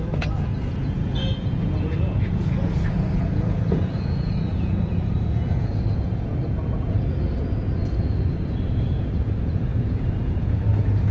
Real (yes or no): no